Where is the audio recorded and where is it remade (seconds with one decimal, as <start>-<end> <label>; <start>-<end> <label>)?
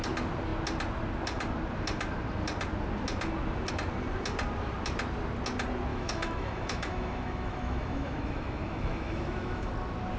0.0-5.9 recorded; 5.9-9.7 remade; 9.7-10.2 recorded